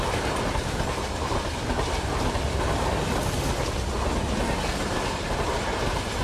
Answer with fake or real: real